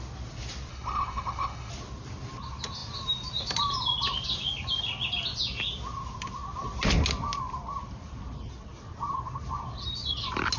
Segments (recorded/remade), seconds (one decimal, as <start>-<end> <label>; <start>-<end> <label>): 0.0-0.7 recorded; 0.7-1.7 remade; 1.7-10.6 recorded